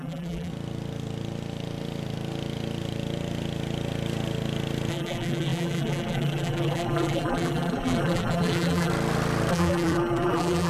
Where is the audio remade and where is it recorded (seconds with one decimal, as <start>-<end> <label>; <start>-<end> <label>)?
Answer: 0.0-0.5 remade; 0.5-4.9 recorded; 4.9-8.9 remade; 8.9-9.5 recorded; 9.5-10.7 remade